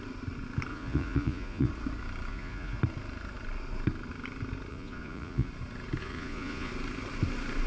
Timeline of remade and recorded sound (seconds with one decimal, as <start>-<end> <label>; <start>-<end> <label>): 0.0-0.7 recorded; 0.7-1.7 remade; 1.7-2.3 recorded; 2.3-2.8 remade; 2.8-4.7 recorded; 4.7-5.5 remade; 5.5-6.0 recorded; 6.0-6.7 remade; 6.7-7.7 recorded